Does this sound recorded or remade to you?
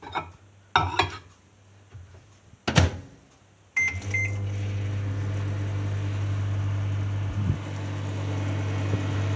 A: recorded